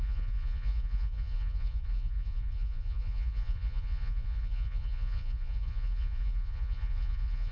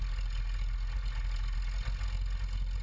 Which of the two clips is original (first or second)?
second